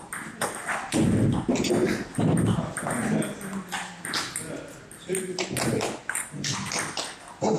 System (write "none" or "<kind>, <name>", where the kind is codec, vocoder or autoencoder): none